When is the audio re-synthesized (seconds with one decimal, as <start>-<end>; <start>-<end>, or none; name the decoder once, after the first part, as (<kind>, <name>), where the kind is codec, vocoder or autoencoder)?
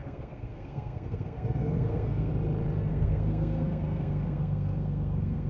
0.0-2.3 (codec, SNAC); 2.9-5.5